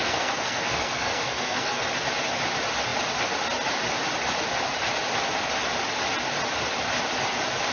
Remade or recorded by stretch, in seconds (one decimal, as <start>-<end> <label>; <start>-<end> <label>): 0.0-1.9 remade; 1.9-7.7 recorded